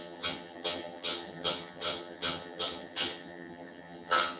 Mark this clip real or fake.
fake